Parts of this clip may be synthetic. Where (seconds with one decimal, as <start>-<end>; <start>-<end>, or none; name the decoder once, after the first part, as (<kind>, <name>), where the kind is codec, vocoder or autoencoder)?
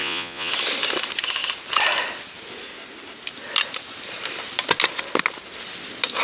0.0-0.5 (vocoder, Vocos)